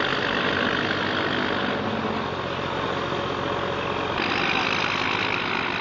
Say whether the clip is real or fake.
real